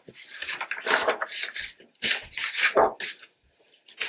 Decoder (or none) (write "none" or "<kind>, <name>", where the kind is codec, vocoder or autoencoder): none